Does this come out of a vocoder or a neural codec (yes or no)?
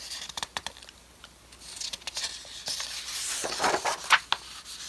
no